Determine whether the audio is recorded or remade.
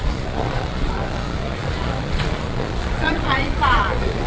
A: remade